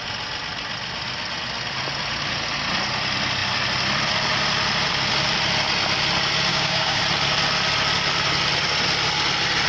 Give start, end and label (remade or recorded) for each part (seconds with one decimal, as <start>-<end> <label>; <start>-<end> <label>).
0.0-6.5 recorded; 6.5-7.0 remade; 7.0-9.7 recorded